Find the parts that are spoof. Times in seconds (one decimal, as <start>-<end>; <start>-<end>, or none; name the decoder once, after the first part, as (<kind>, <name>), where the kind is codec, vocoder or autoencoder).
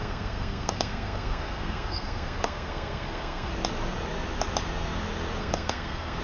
0.0-3.5 (codec, SNAC); 5.4-6.2